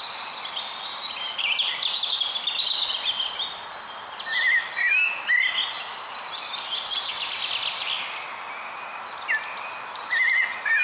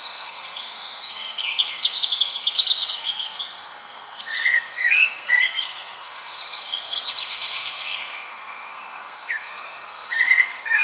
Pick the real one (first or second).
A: first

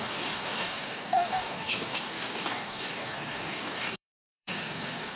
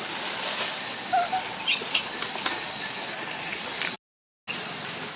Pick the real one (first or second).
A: second